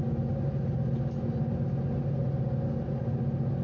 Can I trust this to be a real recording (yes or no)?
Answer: yes